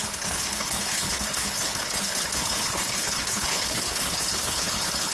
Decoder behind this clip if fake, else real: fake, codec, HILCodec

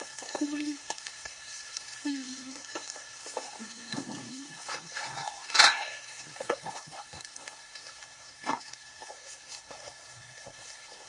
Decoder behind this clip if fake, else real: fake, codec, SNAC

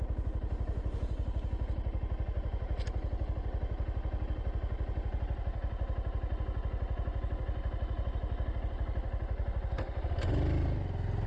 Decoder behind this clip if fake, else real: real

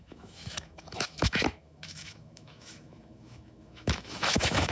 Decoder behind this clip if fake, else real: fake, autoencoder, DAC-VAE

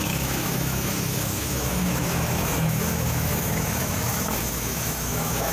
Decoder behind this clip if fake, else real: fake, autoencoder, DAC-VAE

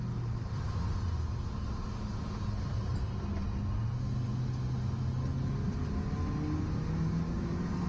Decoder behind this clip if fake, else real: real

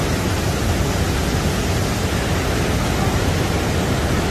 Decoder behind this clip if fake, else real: real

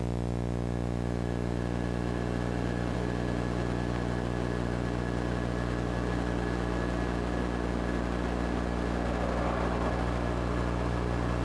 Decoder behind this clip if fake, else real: real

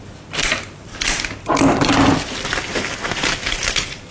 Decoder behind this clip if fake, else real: real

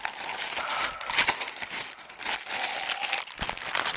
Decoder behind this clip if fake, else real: real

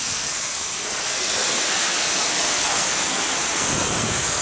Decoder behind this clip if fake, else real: fake, codec, SNAC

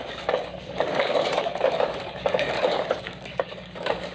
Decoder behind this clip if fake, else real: fake, codec, DAC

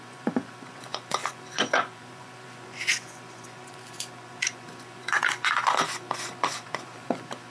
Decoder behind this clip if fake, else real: fake, vocoder, Vocos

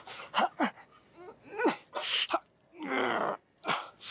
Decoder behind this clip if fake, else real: real